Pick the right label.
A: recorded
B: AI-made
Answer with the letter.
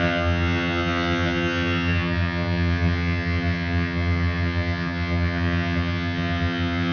B